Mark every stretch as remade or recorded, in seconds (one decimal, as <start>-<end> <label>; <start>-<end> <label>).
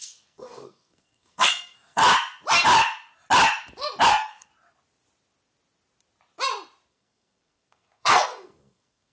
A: 0.0-2.0 remade; 2.0-4.1 recorded; 4.1-4.5 remade; 4.5-6.9 recorded; 6.9-9.1 remade